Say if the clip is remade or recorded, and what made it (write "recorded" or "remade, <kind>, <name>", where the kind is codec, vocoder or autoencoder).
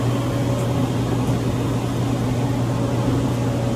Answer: recorded